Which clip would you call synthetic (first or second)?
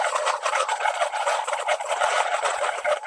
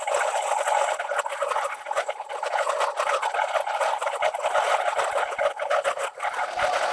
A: first